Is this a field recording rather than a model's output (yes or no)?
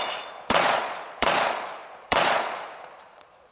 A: no